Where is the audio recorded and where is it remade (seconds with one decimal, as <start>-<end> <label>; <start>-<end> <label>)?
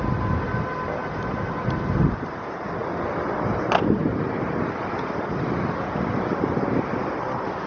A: 0.0-7.7 recorded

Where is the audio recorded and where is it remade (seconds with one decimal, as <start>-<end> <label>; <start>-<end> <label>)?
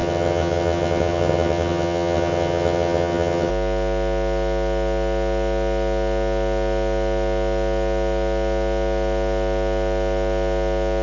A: 0.0-3.5 remade; 3.5-11.0 recorded